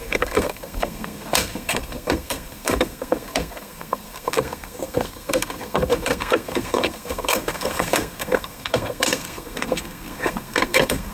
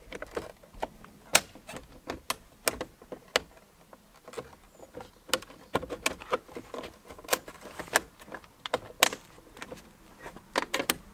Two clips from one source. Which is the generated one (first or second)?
first